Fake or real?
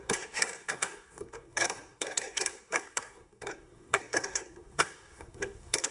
fake